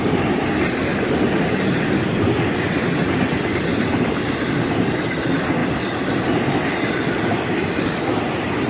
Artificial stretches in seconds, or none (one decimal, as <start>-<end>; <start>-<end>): none